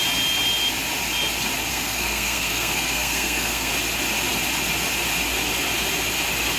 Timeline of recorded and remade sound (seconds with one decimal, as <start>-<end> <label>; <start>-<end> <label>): 0.0-1.7 recorded; 1.7-3.7 remade; 3.7-6.6 recorded